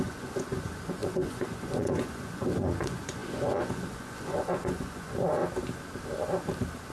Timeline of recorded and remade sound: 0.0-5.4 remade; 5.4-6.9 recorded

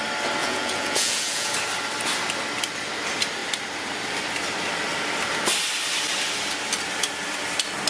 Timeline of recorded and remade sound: 0.0-0.4 recorded; 0.4-1.5 remade; 1.5-7.9 recorded

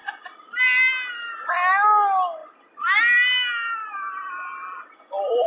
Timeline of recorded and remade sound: 0.0-5.5 recorded

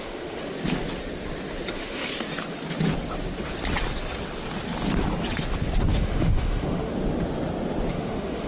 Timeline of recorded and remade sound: 0.0-0.4 remade; 0.4-1.7 recorded; 1.7-2.1 remade; 2.1-5.9 recorded; 5.9-6.9 remade; 6.9-7.9 recorded; 7.9-8.5 remade

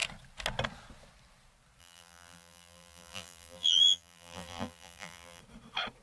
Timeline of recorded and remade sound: 0.0-1.8 recorded; 1.8-5.4 remade; 5.4-6.0 recorded